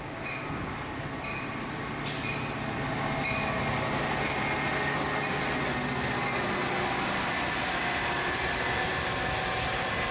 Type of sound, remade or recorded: recorded